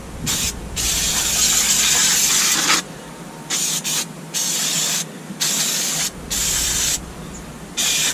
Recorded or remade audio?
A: recorded